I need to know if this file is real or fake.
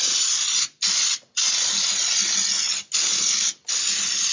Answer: real